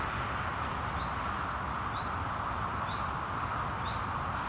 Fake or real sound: real